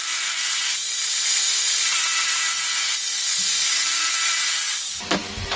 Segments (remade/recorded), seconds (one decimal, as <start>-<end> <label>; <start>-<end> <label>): 0.0-5.6 recorded